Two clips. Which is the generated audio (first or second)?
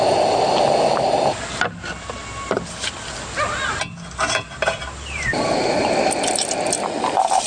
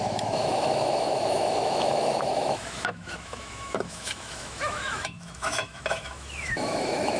second